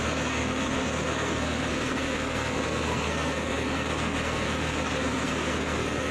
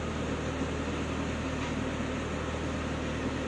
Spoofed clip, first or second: first